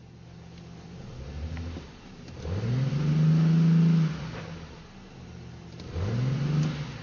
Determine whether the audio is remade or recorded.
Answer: recorded